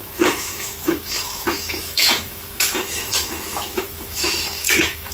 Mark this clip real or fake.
fake